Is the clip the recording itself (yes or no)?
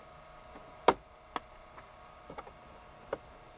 yes